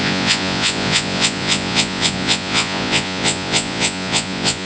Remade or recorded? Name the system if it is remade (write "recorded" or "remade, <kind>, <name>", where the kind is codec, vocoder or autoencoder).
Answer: remade, vocoder, Vocos